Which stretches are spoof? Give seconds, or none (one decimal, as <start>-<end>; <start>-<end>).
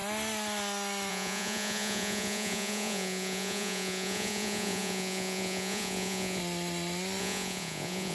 1.1-6.4; 7.2-8.1